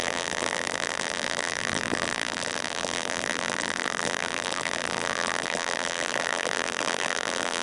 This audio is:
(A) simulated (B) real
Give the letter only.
A